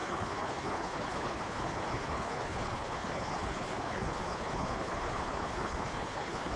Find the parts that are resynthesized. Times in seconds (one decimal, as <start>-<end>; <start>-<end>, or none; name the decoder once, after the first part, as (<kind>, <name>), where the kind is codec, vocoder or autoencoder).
0.0-6.6 (codec, HILCodec)